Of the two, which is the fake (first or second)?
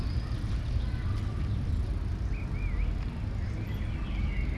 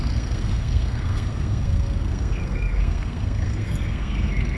second